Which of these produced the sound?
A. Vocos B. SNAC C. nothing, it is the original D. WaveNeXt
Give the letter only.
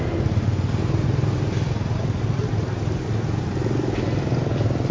C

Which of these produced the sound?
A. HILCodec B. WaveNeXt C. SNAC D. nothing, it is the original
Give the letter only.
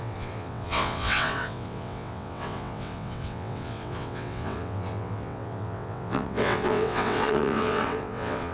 B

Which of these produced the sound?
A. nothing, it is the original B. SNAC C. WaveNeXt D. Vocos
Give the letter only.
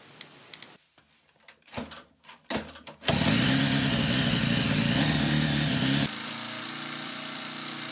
A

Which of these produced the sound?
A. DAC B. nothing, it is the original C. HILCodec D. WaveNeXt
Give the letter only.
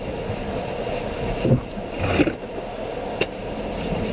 B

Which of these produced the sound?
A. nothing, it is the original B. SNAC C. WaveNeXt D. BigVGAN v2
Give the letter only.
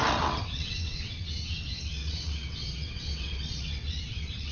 C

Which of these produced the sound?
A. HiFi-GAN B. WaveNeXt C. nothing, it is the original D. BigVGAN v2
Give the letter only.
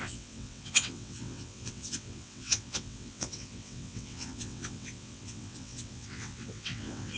B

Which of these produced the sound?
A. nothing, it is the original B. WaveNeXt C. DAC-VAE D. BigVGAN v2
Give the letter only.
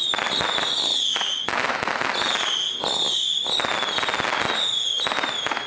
A